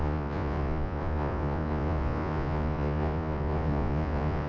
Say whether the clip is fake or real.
fake